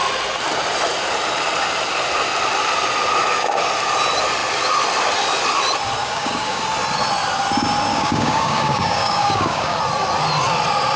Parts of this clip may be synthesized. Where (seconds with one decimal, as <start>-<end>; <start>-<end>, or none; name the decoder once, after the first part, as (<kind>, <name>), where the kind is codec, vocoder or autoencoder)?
6.0-6.6 (codec, DAC); 7.9-9.8